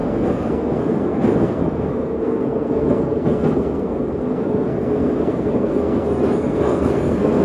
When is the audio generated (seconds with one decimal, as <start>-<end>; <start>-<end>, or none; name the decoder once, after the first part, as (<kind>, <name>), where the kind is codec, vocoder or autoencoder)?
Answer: 0.0-7.4 (codec, SNAC)